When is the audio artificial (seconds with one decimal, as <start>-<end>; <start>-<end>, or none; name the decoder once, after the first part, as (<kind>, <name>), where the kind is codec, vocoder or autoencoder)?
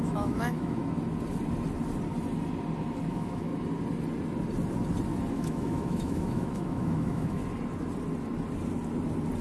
0.0-0.8 (autoencoder, DAC-VAE); 3.1-3.5; 5.3-7.4